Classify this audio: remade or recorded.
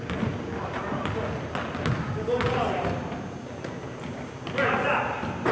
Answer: recorded